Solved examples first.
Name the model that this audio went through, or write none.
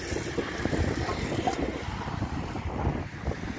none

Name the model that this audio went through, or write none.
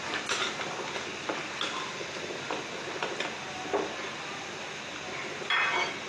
none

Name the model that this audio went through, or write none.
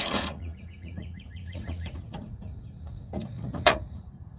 vocoder, Vocos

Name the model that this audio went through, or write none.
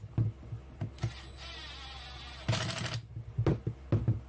none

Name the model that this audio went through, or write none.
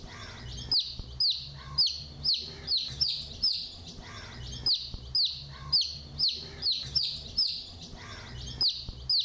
none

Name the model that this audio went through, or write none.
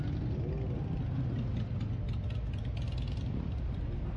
none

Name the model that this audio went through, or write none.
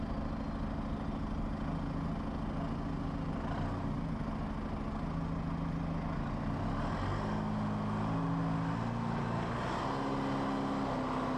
none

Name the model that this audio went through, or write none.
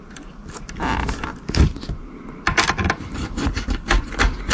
none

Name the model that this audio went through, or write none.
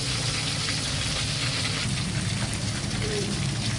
none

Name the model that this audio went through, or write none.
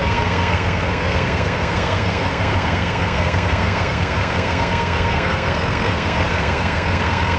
codec, SNAC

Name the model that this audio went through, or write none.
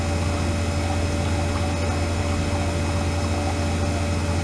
none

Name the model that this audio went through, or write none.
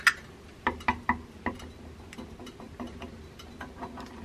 none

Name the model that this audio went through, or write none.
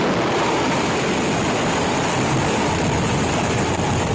vocoder, BigVGAN v2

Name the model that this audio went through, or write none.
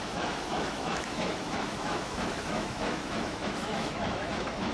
autoencoder, DAC-VAE